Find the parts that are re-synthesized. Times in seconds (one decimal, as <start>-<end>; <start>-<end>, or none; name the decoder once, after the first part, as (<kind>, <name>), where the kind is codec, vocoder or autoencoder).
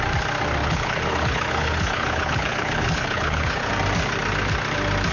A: 0.6-3.7 (codec, HILCodec)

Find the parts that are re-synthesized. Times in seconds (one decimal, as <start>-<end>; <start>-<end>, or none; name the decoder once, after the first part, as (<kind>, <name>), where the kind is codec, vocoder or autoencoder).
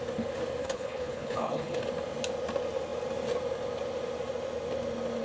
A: 0.6-1.8 (codec, HILCodec)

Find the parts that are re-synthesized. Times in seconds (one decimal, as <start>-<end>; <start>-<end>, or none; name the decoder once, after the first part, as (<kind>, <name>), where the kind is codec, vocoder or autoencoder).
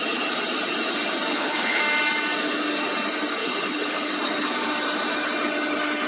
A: 1.3-1.8 (codec, HILCodec); 3.4-4.1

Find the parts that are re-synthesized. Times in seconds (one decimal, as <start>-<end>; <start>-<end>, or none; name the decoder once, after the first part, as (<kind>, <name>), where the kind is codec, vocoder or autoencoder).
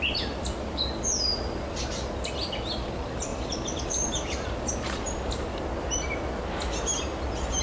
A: none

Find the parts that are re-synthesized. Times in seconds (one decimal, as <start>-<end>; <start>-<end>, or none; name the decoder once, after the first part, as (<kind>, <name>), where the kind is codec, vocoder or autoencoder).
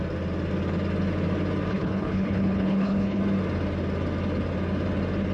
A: 1.7-3.2 (codec, HILCodec)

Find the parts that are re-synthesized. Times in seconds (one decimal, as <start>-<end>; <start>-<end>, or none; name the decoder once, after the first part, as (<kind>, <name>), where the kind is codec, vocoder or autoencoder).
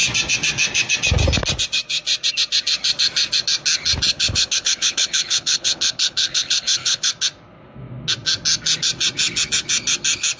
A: 4.1-7.1 (codec, HILCodec)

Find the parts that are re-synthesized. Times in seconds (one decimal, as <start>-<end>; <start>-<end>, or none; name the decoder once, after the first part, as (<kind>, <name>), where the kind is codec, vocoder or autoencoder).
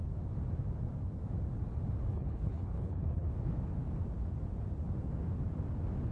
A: 2.1-3.3 (codec, HILCodec)